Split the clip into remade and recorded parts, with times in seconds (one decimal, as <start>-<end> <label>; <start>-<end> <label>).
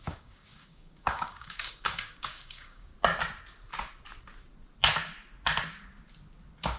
0.0-2.9 remade; 2.9-6.8 recorded